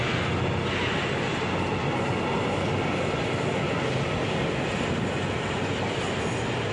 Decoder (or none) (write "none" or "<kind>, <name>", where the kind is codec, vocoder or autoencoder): none